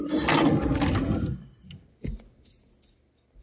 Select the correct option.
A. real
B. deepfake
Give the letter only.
A